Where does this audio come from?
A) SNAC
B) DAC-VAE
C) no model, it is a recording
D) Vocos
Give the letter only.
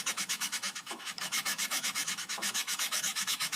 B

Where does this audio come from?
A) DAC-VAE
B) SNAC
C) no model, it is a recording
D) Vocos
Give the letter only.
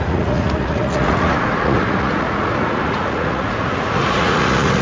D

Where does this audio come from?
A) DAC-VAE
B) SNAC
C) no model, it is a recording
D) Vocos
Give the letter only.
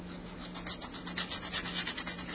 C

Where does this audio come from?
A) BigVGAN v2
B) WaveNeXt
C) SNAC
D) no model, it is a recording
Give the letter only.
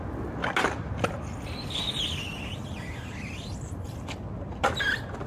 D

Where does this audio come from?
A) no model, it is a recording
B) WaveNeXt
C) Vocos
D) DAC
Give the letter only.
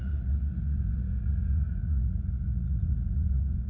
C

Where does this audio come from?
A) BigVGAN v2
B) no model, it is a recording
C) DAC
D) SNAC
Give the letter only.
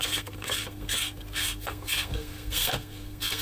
D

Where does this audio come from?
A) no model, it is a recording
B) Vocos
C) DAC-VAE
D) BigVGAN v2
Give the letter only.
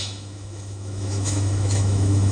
C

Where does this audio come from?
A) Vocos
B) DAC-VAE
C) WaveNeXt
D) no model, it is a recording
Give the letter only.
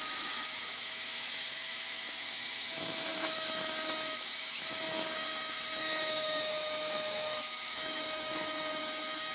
B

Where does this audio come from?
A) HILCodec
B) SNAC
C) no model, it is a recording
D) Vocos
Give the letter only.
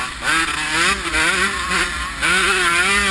C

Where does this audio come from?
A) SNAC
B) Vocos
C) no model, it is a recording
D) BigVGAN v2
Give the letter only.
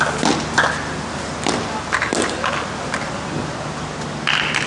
C